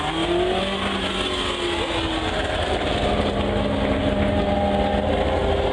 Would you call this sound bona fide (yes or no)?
yes